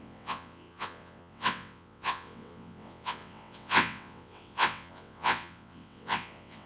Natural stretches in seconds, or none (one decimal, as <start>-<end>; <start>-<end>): none